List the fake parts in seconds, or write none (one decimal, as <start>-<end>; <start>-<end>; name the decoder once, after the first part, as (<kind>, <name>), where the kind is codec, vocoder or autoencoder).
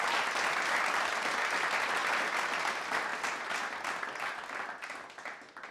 none